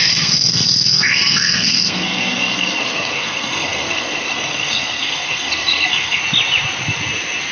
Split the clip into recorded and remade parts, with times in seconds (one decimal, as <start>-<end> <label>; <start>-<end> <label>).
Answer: 0.0-6.2 remade; 6.2-7.5 recorded